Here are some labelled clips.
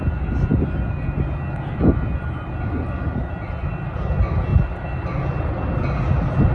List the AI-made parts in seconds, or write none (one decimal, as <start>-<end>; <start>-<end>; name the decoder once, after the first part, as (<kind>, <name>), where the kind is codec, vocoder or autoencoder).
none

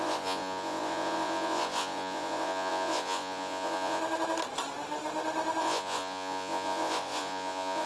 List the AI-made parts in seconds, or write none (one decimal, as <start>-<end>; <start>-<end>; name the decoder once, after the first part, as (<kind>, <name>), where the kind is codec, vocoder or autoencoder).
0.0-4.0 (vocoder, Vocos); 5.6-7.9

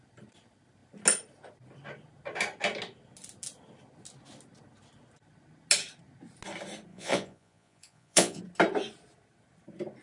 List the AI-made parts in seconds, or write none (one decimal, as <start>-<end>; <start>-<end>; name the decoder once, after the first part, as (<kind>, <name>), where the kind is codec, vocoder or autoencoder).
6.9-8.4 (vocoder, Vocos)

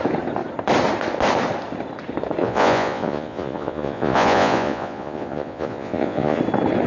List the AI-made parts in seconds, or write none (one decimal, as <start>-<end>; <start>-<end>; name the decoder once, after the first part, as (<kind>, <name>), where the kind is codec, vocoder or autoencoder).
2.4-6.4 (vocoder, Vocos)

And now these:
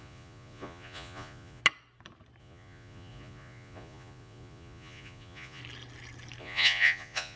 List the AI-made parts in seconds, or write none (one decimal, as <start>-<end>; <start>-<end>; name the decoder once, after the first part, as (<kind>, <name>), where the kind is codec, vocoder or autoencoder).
0.0-1.6 (vocoder, Vocos); 2.4-5.6; 6.4-7.4

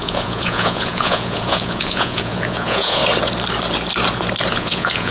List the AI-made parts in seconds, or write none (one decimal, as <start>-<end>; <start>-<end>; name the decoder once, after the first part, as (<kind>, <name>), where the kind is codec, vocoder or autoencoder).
0.0-3.0 (vocoder, Vocos); 4.5-5.1

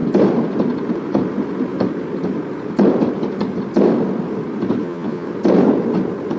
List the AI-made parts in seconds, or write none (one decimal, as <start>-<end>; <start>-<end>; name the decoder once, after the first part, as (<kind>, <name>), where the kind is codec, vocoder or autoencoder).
4.8-5.3 (vocoder, Vocos)